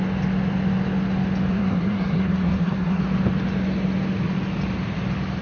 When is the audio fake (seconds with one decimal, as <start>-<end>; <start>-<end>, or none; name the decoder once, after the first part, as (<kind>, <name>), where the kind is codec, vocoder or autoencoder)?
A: 1.5-3.0 (codec, SNAC)

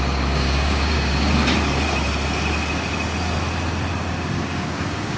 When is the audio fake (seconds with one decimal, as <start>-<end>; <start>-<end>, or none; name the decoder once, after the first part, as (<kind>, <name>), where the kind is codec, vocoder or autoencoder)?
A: 0.0-1.4 (codec, DAC); 4.3-5.2

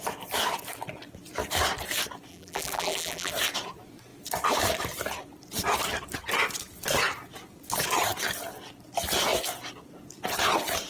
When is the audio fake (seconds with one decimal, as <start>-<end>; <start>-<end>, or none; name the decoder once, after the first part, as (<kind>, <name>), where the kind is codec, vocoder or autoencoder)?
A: 2.3-3.3 (vocoder, BigVGAN v2)